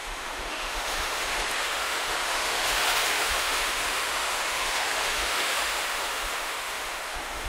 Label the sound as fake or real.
fake